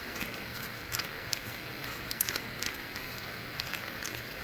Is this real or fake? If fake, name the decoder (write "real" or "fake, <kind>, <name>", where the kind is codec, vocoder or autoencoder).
fake, codec, SNAC